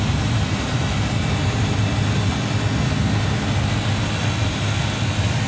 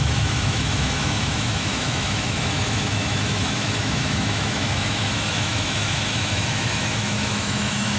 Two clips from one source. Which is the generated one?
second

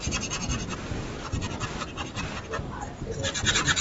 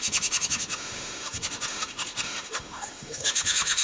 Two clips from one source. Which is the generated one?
second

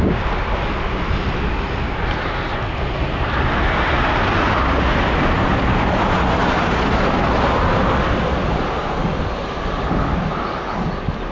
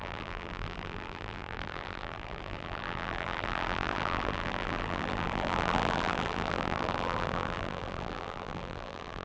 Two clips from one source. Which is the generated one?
second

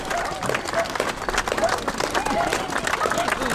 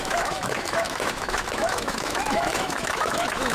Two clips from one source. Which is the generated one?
second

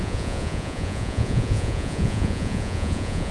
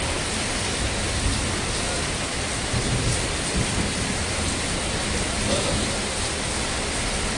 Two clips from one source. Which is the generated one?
first